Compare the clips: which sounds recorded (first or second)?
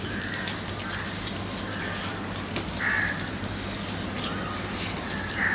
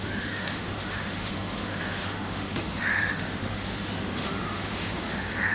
first